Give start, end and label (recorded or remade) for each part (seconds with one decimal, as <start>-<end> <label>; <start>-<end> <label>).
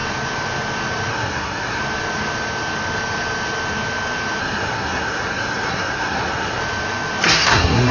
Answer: 0.0-1.1 recorded; 1.1-1.8 remade; 1.8-4.4 recorded; 4.4-6.6 remade; 6.6-7.2 recorded; 7.2-7.9 remade